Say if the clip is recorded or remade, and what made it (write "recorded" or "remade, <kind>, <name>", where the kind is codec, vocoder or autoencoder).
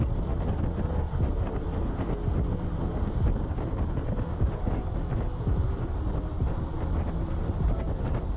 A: recorded